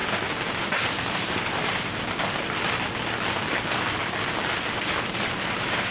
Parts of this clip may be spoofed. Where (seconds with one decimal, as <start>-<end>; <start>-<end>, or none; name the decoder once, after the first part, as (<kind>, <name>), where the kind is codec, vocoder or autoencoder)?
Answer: 1.0-1.9 (vocoder, BigVGAN v2); 5.4-5.9